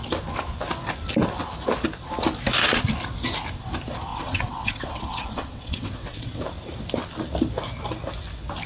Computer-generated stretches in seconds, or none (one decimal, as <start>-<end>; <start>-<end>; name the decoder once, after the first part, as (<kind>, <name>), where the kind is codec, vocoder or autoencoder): 4.1-6.4 (vocoder, WaveNeXt)